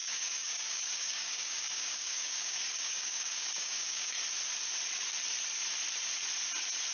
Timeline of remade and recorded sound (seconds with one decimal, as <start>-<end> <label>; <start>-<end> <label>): 0.0-4.1 remade; 4.1-6.9 recorded